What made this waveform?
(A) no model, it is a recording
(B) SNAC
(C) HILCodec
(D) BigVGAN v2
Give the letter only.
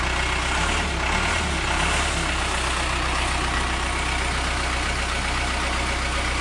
A